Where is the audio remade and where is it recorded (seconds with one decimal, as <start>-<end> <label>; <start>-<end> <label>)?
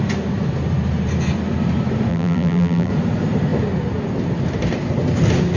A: 0.0-2.1 recorded; 2.1-2.9 remade; 2.9-5.6 recorded